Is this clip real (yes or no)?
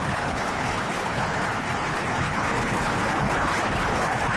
no